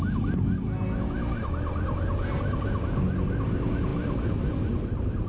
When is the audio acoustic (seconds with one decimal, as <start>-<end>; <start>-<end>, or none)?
0.0-5.3